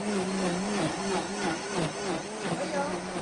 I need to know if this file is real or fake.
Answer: real